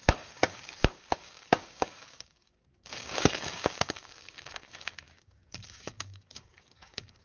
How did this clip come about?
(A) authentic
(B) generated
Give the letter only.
B